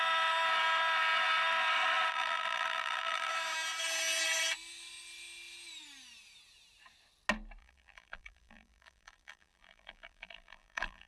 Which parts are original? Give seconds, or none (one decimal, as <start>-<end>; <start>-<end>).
0.0-2.1; 3.3-7.6